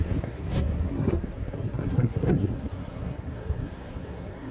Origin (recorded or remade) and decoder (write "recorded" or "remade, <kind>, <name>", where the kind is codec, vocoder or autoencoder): remade, codec, SNAC